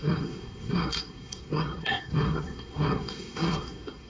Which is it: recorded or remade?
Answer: remade